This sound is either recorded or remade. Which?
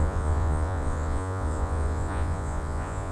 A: remade